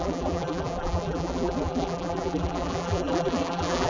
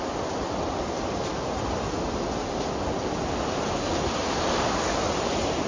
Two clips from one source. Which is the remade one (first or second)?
first